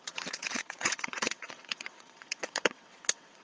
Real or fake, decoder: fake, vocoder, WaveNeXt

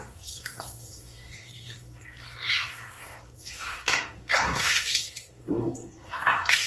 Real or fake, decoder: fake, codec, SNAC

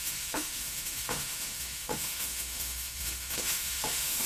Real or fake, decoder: fake, autoencoder, DAC-VAE